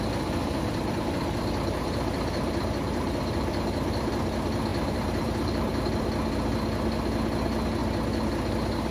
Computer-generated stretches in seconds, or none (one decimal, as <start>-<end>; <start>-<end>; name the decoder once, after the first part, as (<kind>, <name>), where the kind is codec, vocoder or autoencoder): 0.4-4.1 (vocoder, BigVGAN v2); 4.7-5.8